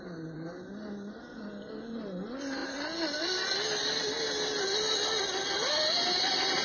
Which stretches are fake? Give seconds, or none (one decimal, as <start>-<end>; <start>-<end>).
none